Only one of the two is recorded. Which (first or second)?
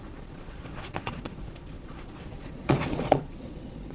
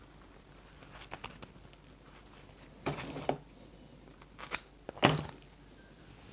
second